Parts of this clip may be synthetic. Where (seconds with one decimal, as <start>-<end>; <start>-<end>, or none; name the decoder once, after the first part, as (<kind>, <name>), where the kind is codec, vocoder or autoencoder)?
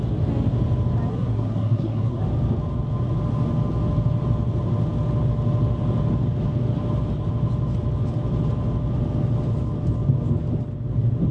1.1-2.2 (codec, SNAC)